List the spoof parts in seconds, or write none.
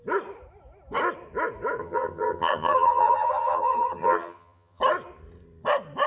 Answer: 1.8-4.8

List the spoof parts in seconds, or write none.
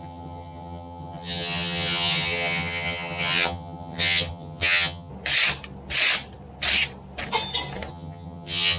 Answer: 0.0-5.1; 7.9-8.8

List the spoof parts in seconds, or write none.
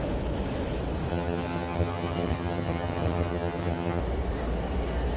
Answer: 1.1-4.0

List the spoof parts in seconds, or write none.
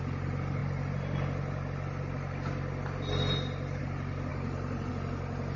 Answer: none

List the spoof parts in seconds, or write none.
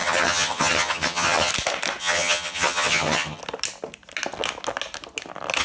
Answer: 0.0-1.5; 2.0-3.4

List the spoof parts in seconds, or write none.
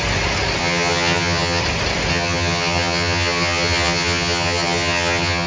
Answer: 0.6-1.6; 2.1-5.5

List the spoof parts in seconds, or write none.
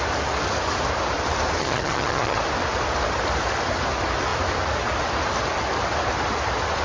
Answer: 1.6-2.4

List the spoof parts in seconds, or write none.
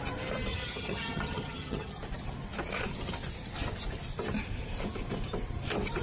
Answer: 0.5-2.0